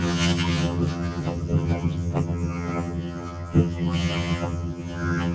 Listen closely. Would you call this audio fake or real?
fake